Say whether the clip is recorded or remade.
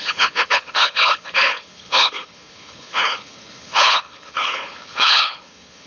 remade